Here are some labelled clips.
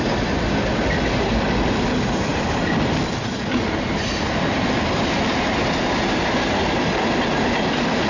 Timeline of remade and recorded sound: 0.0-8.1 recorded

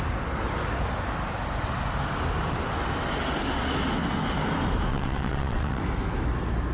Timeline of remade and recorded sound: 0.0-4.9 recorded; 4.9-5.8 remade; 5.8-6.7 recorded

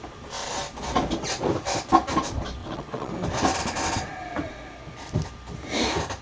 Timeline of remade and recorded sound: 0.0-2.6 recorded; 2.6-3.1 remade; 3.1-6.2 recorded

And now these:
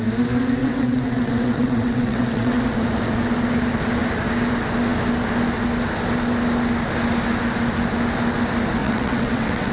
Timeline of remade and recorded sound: 0.0-0.6 recorded; 0.6-2.6 remade; 2.6-8.8 recorded; 8.8-9.7 remade